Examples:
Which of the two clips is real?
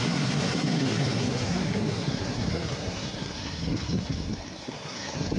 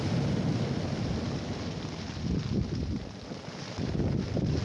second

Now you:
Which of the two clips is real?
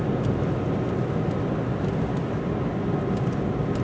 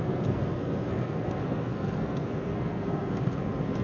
first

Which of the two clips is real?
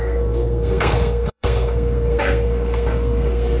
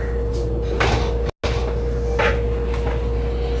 second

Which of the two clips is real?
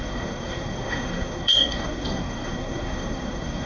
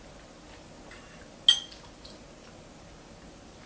second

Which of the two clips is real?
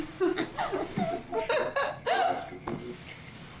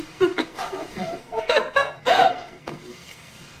first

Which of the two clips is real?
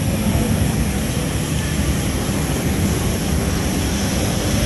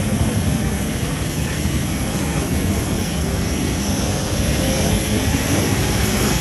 first